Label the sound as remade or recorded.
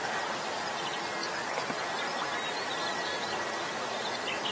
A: recorded